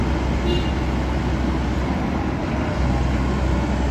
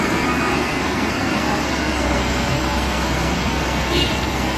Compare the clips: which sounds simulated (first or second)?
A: second